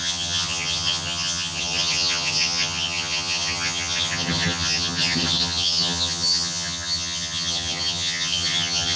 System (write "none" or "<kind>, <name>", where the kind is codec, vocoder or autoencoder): vocoder, HiFi-GAN